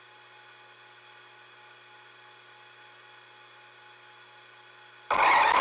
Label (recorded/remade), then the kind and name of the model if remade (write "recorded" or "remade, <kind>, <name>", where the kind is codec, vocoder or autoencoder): recorded